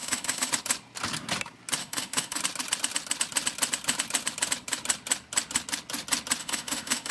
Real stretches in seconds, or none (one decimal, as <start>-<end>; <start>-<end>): 0.5-1.8; 2.4-6.4

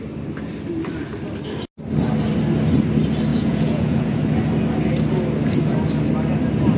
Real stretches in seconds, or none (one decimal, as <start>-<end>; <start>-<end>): 0.0-3.3; 4.2-6.8

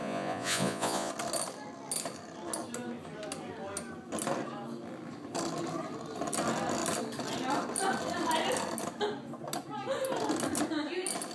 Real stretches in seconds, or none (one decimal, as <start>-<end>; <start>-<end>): 1.1-11.3

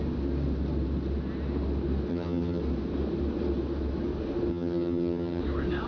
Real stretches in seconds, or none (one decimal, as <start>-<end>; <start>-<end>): 0.0-2.1; 2.6-4.5; 5.4-5.9

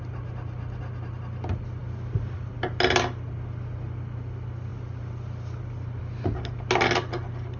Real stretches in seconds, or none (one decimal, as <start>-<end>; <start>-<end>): 0.0-7.6

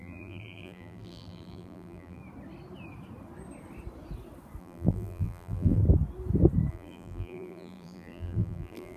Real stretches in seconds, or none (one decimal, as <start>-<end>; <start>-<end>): 2.2-4.6; 5.8-6.7

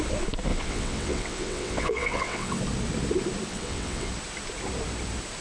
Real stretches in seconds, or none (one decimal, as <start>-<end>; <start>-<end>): 0.0-0.5; 2.6-3.5; 4.1-5.4